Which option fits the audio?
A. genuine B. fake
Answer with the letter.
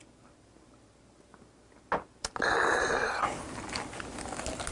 A